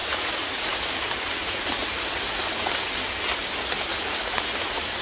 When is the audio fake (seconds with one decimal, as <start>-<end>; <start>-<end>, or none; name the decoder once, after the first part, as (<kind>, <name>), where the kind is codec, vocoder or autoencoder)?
0.0-0.8 (vocoder, Vocos); 1.4-2.7; 3.9-5.0